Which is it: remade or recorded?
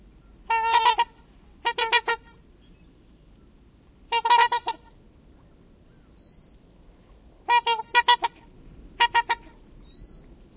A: recorded